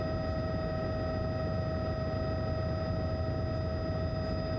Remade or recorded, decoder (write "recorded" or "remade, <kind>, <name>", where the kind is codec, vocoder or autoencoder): recorded